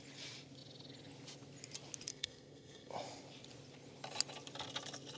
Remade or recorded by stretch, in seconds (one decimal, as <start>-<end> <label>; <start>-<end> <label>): 0.0-2.1 recorded; 2.1-2.9 remade; 2.9-5.2 recorded